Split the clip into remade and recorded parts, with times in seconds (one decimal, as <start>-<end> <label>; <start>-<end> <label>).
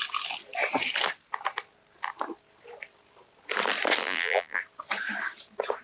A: 0.0-4.0 recorded; 4.0-4.6 remade; 4.6-5.8 recorded